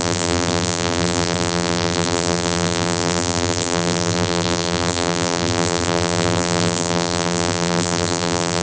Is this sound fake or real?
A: fake